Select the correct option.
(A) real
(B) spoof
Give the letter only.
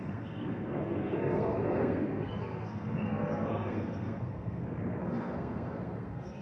B